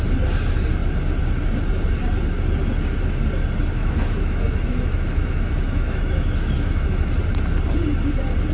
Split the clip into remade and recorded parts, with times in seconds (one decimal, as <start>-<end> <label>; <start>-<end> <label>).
0.0-3.8 recorded; 3.8-7.1 remade; 7.1-8.5 recorded